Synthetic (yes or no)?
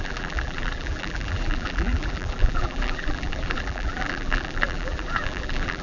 yes